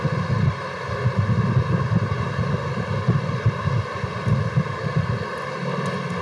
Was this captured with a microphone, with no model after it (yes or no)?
yes